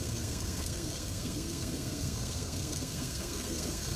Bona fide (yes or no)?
no